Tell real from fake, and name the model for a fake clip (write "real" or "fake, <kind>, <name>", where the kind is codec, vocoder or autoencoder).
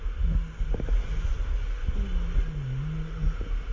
real